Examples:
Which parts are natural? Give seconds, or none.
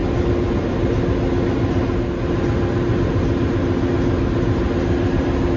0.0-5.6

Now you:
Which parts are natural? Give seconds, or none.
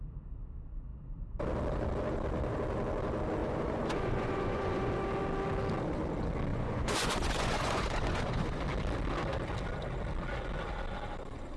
0.0-3.4; 4.9-6.5; 8.6-11.6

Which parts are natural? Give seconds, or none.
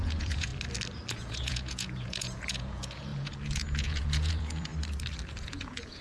0.5-1.1; 4.7-5.4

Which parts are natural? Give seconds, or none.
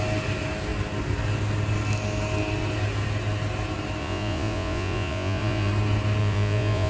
0.0-4.0; 5.7-6.2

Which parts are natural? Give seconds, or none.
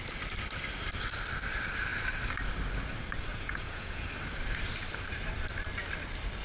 0.0-3.3; 4.1-6.4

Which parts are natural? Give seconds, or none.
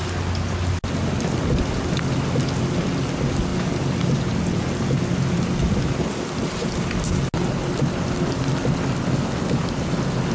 0.0-10.3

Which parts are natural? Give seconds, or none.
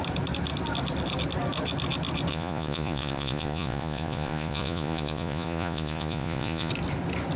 0.0-2.3; 6.7-7.4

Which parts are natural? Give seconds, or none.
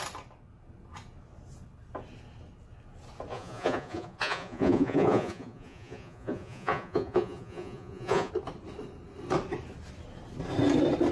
0.0-3.3; 8.3-11.1